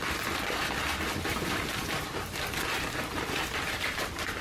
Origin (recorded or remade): remade